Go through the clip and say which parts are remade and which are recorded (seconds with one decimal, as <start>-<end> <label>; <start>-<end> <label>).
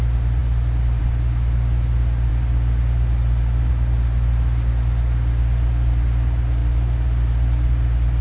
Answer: 0.0-8.2 recorded